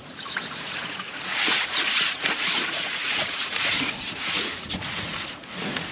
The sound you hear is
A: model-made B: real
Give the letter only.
A